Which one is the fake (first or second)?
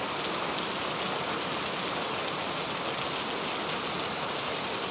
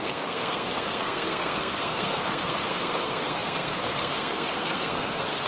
second